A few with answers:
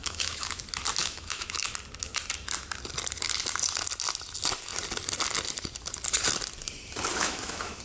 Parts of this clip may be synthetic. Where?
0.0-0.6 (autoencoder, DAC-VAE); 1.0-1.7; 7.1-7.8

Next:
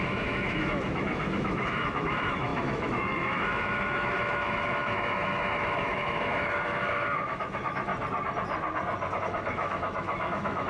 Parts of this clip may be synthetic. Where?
0.0-7.9 (autoencoder, DAC-VAE); 9.2-10.7

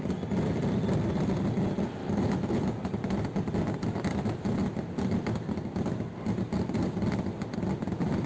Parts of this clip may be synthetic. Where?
2.0-2.5 (autoencoder, DAC-VAE)

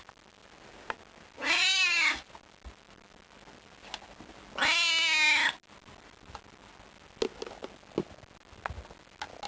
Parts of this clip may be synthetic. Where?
none

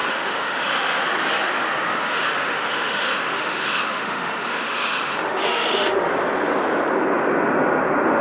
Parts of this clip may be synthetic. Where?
0.0-1.0 (autoencoder, DAC-VAE); 1.9-6.1

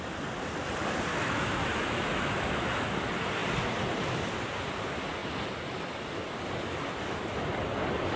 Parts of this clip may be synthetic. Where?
1.1-2.7 (autoencoder, DAC-VAE)

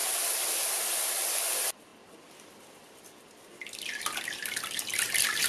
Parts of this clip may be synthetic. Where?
none